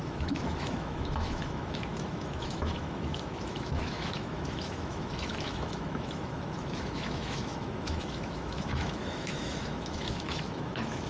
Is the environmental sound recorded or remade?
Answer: remade